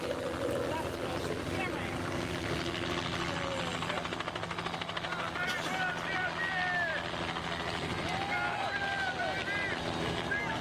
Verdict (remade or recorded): recorded